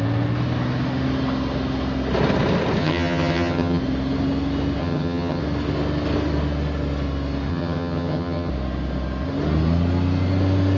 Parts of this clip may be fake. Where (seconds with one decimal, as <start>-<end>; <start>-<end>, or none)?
2.8-3.8; 4.8-5.4; 7.5-8.5